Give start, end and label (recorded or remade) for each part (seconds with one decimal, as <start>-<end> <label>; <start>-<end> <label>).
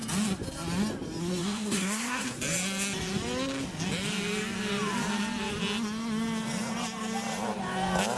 0.0-1.4 recorded; 1.4-2.4 remade; 2.4-8.2 recorded